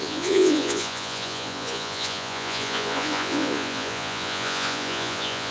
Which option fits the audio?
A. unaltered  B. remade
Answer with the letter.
B